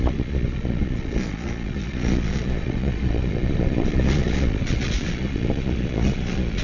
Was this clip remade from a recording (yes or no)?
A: yes